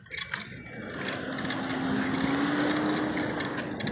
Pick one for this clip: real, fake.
real